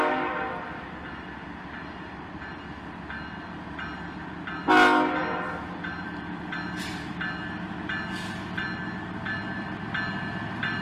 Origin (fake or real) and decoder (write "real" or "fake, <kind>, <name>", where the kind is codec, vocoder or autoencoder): real